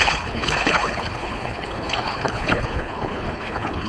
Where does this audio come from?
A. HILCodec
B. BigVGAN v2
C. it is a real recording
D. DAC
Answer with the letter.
A